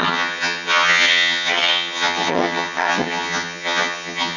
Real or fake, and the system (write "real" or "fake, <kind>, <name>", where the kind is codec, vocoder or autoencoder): fake, vocoder, HiFi-GAN